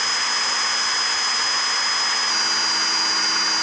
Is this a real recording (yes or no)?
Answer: yes